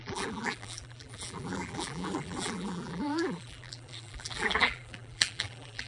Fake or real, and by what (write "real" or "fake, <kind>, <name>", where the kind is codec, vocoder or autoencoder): fake, vocoder, BigVGAN v2